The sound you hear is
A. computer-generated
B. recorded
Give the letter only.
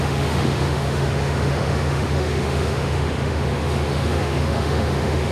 A